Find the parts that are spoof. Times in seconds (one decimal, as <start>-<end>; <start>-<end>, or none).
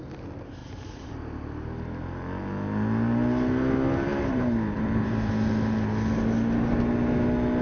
0.6-1.1; 4.1-5.3